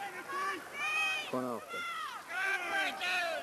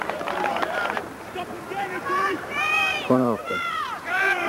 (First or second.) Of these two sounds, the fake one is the second